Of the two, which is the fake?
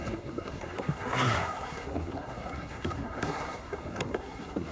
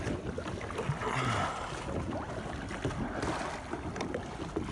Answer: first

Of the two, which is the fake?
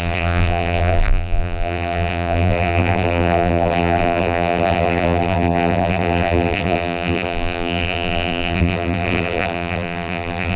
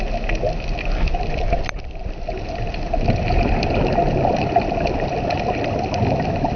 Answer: first